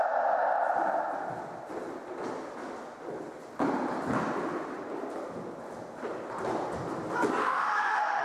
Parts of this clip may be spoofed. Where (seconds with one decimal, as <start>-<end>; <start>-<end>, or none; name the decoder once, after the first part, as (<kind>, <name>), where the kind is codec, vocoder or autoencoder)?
7.4-8.2 (autoencoder, DAC-VAE)